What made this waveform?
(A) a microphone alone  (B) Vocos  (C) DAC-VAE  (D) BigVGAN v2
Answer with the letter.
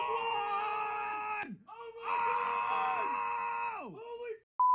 A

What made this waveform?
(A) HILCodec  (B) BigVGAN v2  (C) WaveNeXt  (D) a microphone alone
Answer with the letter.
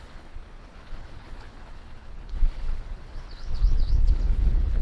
A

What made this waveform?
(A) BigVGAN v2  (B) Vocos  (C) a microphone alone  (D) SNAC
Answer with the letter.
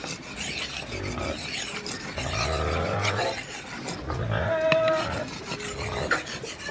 C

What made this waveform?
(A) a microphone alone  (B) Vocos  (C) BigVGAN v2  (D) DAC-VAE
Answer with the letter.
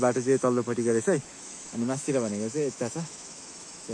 D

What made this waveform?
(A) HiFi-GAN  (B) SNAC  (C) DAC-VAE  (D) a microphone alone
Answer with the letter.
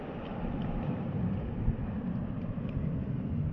D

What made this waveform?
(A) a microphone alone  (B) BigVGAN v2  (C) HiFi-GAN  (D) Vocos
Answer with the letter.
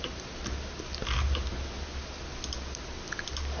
A